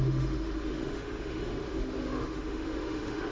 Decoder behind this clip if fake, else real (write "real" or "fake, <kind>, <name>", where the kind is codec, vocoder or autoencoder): fake, autoencoder, DAC-VAE